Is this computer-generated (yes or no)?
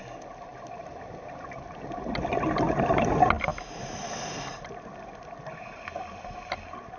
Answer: no